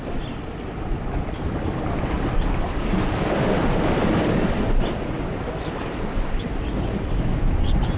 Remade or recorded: recorded